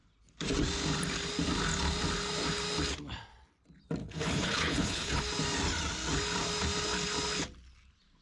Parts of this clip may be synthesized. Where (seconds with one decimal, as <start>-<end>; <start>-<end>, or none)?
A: 4.0-5.2